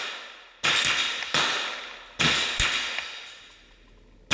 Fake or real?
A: real